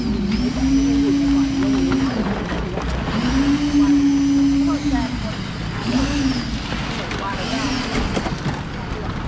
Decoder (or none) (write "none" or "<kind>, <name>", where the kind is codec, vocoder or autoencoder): none